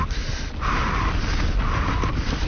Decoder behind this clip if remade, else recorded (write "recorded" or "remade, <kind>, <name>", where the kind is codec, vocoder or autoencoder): recorded